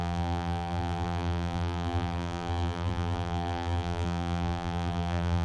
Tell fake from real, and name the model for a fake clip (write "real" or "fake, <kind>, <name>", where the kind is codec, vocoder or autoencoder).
fake, vocoder, BigVGAN v2